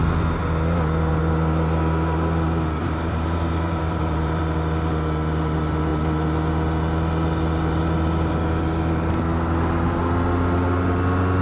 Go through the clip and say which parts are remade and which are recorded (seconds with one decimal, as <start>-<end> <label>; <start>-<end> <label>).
0.0-2.8 recorded; 2.8-4.4 remade; 4.4-11.4 recorded